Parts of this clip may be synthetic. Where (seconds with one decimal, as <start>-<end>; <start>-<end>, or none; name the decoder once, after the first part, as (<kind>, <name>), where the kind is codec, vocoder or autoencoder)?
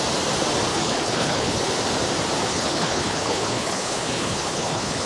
0.7-1.7 (codec, HILCodec); 2.5-5.1